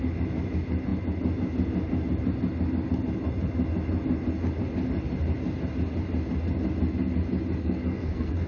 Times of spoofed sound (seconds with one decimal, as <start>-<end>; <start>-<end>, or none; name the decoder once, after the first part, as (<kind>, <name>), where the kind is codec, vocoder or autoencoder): 7.6-8.5 (codec, SNAC)